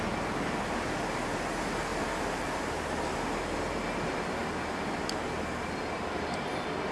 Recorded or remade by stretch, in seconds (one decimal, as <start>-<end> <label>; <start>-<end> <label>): 0.0-6.9 recorded